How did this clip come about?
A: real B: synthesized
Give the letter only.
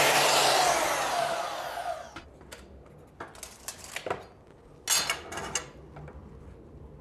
A